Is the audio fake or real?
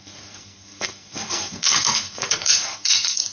fake